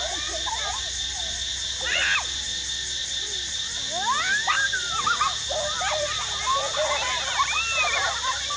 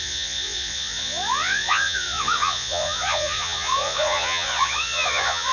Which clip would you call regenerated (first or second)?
second